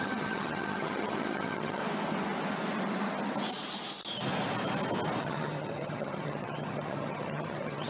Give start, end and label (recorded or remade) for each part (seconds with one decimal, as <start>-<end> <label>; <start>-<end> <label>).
0.0-1.8 remade; 1.8-5.2 recorded; 5.2-7.9 remade